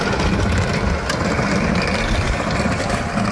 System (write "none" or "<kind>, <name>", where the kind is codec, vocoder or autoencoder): none